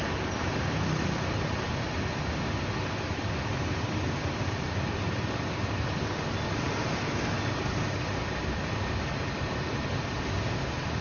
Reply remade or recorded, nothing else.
recorded